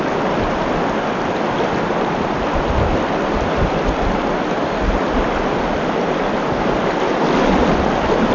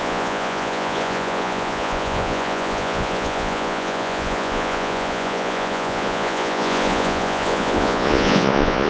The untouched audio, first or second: first